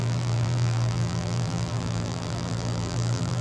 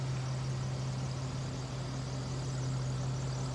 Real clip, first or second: second